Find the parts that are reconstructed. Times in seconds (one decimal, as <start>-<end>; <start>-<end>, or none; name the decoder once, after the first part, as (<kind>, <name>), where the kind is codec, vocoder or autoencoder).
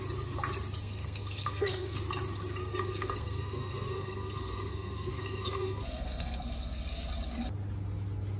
0.8-2.0 (codec, SNAC); 2.6-6.4